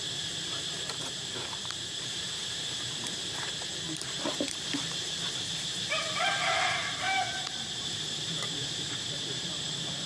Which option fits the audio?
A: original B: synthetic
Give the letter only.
B